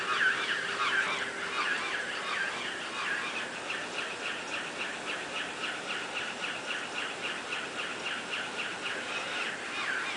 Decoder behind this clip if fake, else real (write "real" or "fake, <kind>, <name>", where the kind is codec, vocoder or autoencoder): real